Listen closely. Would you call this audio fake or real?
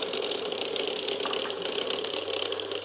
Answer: fake